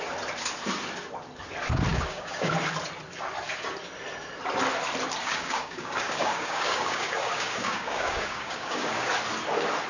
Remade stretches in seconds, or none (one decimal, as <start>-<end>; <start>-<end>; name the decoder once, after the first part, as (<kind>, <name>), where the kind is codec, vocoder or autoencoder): 1.9-2.5 (codec, DAC); 5.2-9.1